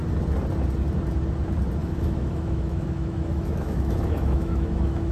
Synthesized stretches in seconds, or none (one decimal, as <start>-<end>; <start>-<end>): 1.8-5.1